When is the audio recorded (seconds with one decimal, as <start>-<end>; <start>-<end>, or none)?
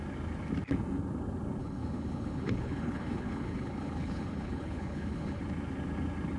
0.0-1.6; 5.4-6.4